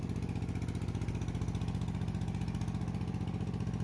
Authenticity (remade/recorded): recorded